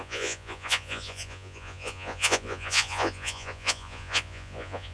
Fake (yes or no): yes